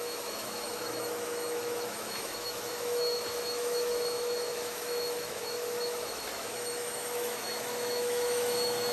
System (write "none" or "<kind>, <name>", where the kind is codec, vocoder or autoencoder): autoencoder, DAC-VAE